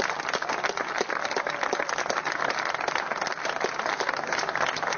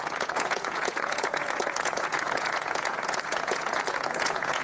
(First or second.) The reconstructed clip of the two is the second